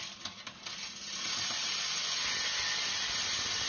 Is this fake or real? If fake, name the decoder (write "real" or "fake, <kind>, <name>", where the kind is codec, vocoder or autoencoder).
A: real